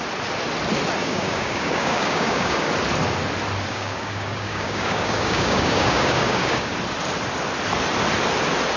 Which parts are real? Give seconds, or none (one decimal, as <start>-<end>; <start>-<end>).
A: 0.0-1.0; 2.7-3.7; 6.7-8.8